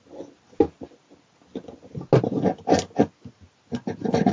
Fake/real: real